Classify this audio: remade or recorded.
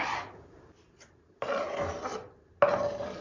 recorded